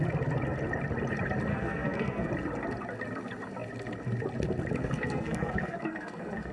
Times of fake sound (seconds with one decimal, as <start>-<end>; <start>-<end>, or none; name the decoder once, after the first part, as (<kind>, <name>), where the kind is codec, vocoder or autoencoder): 1.5-2.3 (codec, SNAC); 4.8-6.5

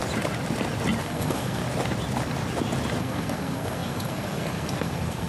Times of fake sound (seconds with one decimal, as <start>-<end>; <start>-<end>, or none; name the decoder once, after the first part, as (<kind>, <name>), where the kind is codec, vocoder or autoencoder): 1.0-1.6 (codec, SNAC); 3.0-5.3